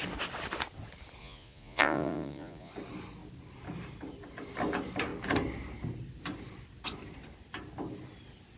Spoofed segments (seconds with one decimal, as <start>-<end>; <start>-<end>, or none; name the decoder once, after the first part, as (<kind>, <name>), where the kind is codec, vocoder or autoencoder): 1.2-2.7 (vocoder, Vocos)